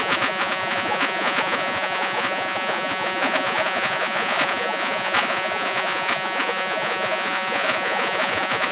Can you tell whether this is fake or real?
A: fake